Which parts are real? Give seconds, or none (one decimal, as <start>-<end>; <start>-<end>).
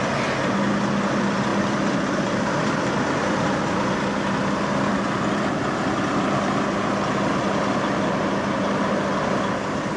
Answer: 0.0-1.5; 4.3-4.9; 5.7-10.0